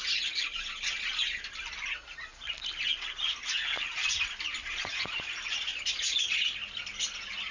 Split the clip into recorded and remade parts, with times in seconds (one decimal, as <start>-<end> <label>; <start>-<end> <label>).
0.0-7.5 recorded